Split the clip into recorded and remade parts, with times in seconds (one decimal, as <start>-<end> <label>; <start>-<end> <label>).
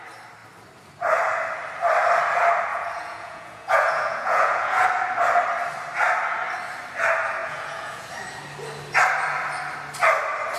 0.0-2.7 recorded; 2.7-4.9 remade; 4.9-7.4 recorded; 7.4-8.1 remade; 8.1-10.6 recorded